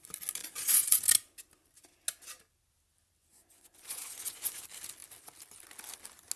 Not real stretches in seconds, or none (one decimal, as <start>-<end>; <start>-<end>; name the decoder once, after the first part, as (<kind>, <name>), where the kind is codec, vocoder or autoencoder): 0.4-1.0 (vocoder, Vocos); 3.2-4.6